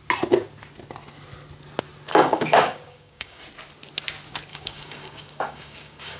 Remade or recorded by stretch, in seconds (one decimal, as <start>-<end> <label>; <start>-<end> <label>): 0.0-2.1 recorded; 2.1-3.4 remade; 3.4-4.5 recorded; 4.5-6.2 remade